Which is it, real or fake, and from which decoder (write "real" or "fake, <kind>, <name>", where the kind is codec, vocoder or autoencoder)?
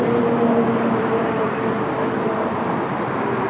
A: real